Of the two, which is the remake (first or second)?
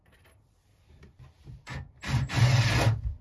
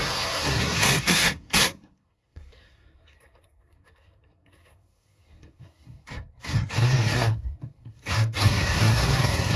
second